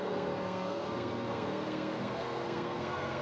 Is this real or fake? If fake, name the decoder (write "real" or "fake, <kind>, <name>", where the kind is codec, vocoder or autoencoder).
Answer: fake, codec, SNAC